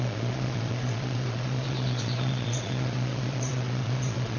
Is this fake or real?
fake